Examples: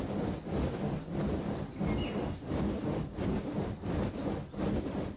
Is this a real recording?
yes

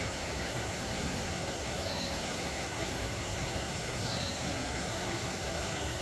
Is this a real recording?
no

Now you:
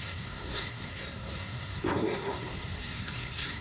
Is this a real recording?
no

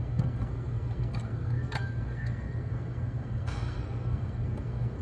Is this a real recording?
no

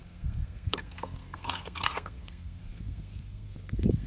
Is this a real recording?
no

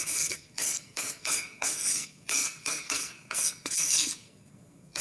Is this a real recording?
no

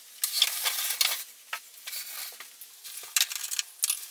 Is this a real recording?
yes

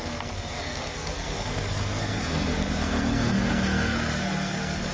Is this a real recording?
no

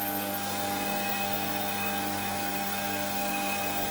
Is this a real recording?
no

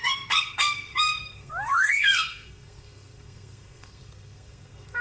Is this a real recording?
no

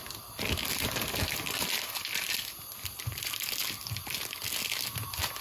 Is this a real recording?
yes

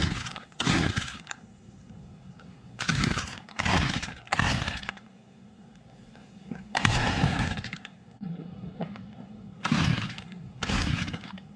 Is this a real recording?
no